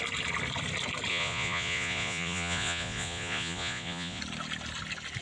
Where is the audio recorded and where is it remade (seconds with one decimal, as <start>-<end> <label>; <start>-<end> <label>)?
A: 0.0-1.1 recorded; 1.1-4.2 remade; 4.2-5.2 recorded